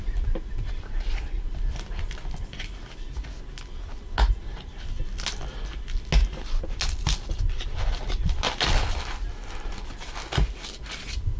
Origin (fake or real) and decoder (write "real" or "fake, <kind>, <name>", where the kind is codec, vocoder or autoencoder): real